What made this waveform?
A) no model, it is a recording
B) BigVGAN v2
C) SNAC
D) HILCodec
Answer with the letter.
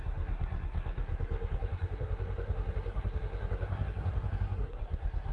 C